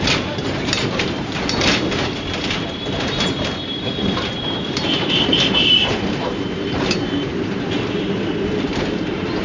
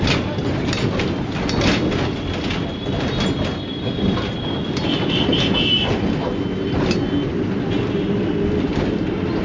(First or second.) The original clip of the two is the second